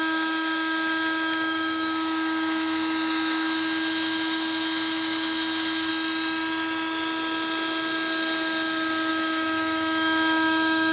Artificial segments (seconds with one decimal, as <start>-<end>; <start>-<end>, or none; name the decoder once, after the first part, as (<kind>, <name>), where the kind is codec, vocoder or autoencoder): 0.0-5.9 (autoencoder, DAC-VAE); 9.1-10.9